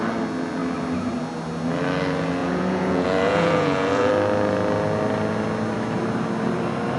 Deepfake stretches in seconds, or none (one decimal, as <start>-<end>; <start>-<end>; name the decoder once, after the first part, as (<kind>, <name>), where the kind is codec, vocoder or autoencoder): 2.4-4.1 (vocoder, Vocos)

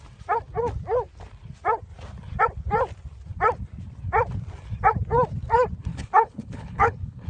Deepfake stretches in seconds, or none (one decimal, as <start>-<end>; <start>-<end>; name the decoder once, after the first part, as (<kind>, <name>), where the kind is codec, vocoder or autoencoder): 5.9-7.3 (codec, HILCodec)

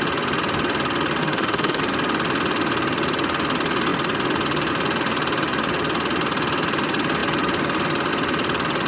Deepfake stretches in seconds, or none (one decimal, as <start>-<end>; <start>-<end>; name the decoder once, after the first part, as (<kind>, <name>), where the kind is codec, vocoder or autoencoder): 1.2-1.8 (autoencoder, DAC-VAE)

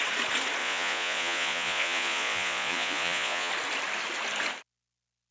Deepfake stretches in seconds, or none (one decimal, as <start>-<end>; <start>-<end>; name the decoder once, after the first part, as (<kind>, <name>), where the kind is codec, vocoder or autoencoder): 0.6-3.5 (vocoder, Vocos)

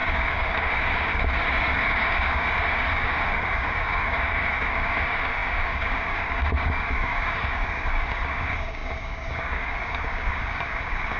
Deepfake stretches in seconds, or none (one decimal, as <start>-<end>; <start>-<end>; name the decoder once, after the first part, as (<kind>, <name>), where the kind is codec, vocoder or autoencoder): 0.0-11.2 (codec, DAC)

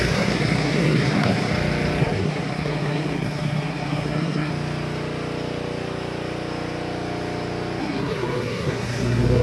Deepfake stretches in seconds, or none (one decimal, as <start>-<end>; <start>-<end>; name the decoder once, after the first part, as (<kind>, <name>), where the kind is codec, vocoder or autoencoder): 0.0-1.5 (codec, SNAC); 2.0-4.5; 7.8-9.4

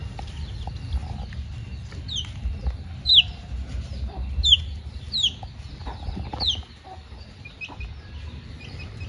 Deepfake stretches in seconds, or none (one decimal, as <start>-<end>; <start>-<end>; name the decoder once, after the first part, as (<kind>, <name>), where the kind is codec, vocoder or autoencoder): none